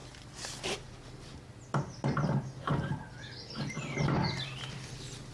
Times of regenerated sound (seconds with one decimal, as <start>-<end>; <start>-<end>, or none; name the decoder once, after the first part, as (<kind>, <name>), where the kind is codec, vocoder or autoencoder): none